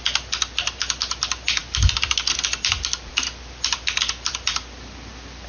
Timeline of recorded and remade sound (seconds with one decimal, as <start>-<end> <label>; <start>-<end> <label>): 0.0-5.5 recorded